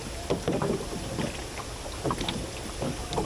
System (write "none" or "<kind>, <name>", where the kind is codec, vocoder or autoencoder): none